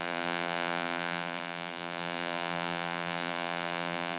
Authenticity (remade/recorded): remade